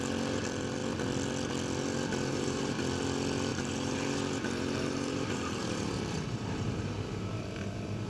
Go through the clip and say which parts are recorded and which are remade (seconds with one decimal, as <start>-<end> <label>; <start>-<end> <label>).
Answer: 0.0-2.3 recorded; 2.3-2.8 remade; 2.8-3.5 recorded; 3.5-7.4 remade; 7.4-8.1 recorded